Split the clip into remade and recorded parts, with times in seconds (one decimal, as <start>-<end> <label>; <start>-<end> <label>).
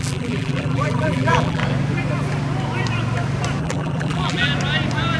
0.0-1.6 remade; 1.6-3.6 recorded; 3.6-4.5 remade; 4.5-5.2 recorded